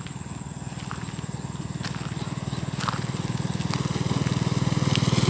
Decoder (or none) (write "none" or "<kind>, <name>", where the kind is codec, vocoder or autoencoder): none